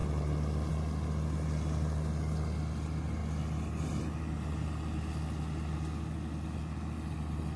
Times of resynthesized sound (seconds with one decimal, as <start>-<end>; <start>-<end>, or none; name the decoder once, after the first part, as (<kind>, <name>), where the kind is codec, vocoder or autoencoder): none